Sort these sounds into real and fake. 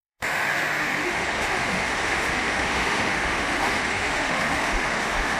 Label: fake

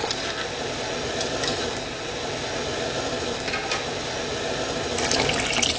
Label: real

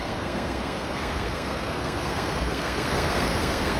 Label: fake